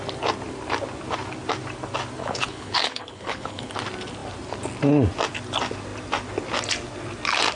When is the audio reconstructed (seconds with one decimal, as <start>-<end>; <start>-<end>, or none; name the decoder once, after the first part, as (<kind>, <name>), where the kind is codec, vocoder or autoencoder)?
2.2-3.7 (codec, HILCodec)